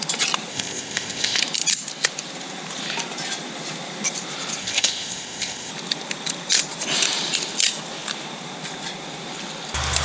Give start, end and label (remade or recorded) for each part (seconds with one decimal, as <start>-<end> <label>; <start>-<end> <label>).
0.0-0.5 recorded; 0.5-1.4 remade; 1.4-4.6 recorded; 4.6-5.7 remade; 5.7-10.0 recorded